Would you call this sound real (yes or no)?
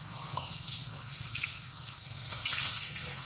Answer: no